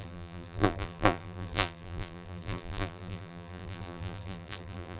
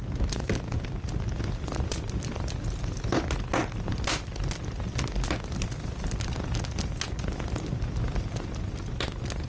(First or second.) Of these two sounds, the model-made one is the first